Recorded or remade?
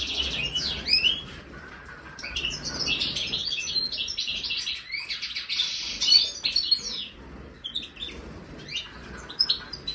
recorded